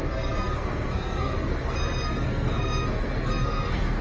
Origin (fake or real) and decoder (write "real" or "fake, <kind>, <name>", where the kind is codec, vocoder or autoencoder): fake, codec, SNAC